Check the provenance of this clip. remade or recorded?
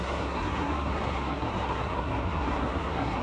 remade